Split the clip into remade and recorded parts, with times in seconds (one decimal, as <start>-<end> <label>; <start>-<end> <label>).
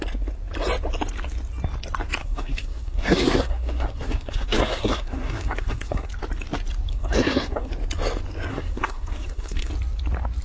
0.0-2.2 recorded; 2.2-6.1 remade; 6.1-6.9 recorded; 6.9-7.7 remade; 7.7-8.5 recorded; 8.5-9.7 remade; 9.7-10.4 recorded